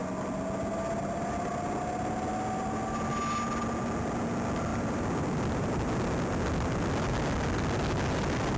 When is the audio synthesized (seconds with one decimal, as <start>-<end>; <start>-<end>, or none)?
4.7-5.8